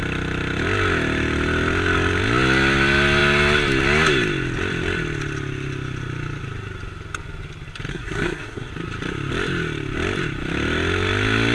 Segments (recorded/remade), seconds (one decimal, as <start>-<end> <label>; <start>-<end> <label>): 0.0-7.9 recorded; 7.9-8.7 remade; 8.7-11.5 recorded